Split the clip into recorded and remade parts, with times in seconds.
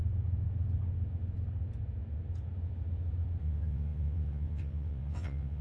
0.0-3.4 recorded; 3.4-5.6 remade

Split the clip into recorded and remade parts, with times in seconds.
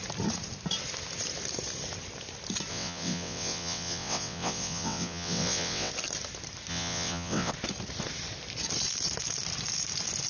0.0-2.7 recorded; 2.7-5.9 remade; 5.9-6.7 recorded; 6.7-7.5 remade; 7.5-10.3 recorded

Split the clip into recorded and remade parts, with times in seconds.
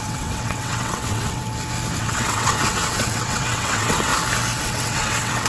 0.0-1.4 remade; 1.4-2.0 recorded; 2.0-4.1 remade; 4.1-4.6 recorded; 4.6-5.5 remade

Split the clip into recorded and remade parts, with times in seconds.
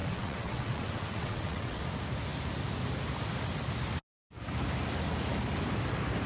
0.0-1.8 remade; 1.8-6.3 recorded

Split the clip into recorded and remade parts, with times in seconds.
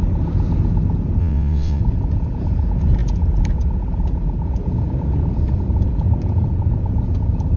0.0-1.2 recorded; 1.2-1.8 remade; 1.8-7.6 recorded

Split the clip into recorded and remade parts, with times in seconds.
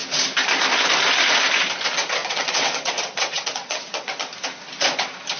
0.0-2.2 recorded; 2.2-4.3 remade; 4.3-5.4 recorded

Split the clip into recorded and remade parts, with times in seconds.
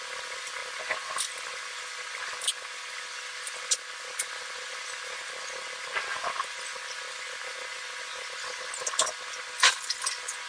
0.0-10.5 recorded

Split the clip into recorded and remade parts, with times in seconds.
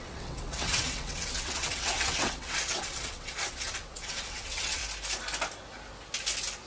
0.0-4.8 remade; 4.8-6.7 recorded